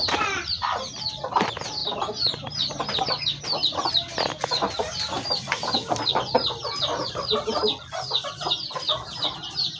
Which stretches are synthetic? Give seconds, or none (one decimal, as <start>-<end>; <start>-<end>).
none